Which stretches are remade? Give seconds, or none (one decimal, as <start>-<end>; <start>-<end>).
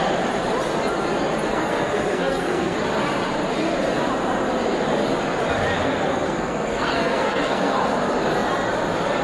1.5-2.8; 5.8-7.8